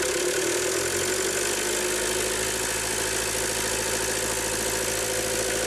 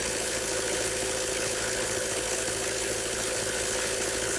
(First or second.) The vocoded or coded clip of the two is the second